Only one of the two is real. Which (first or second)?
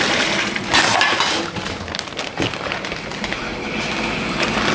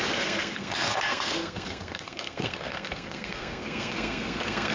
first